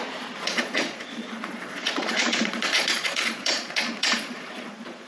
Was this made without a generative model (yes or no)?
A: no